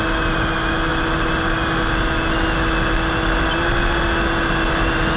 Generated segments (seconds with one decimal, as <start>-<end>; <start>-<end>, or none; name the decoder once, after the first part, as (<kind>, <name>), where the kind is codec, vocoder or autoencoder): none